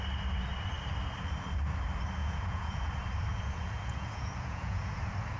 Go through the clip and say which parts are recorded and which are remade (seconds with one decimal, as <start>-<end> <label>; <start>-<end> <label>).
0.0-2.2 recorded; 2.2-2.9 remade; 2.9-3.3 recorded; 3.3-5.0 remade; 5.0-5.4 recorded